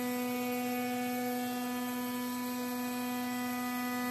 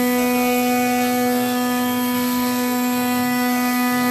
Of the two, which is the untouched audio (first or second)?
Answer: first